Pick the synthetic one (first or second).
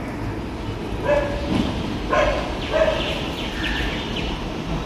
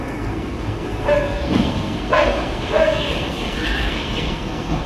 second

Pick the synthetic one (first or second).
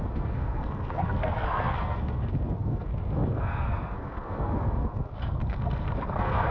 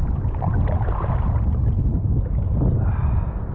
first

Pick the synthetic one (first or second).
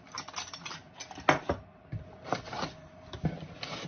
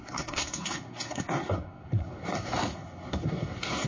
second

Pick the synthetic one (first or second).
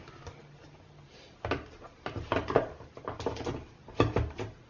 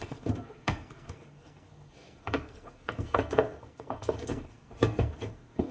second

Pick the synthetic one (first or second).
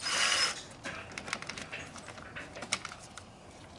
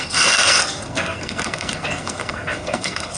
second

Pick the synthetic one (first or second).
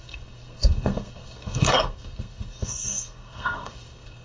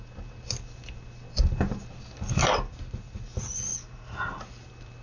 first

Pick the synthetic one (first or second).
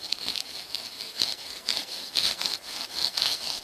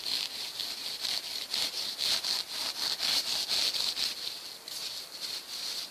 first